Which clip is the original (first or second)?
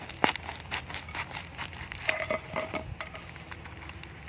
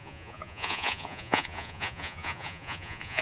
first